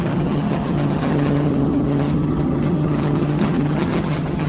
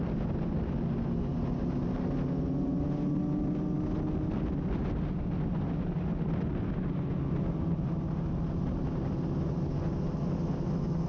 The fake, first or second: first